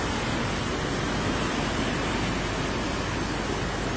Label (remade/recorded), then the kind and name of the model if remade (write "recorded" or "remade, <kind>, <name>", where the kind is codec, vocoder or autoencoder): recorded